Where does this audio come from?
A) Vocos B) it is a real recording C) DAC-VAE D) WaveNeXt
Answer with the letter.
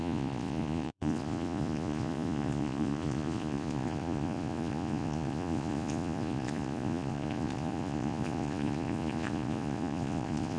A